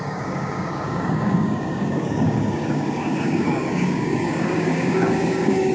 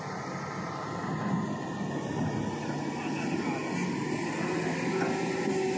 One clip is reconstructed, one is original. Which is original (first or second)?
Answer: second